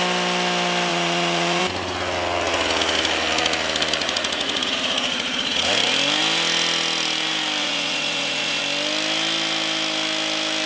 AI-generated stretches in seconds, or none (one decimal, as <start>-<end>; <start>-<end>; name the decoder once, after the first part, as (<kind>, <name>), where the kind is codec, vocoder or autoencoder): 0.9-1.6 (vocoder, Vocos); 4.0-5.7; 7.6-8.6